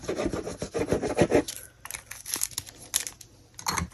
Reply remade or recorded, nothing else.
recorded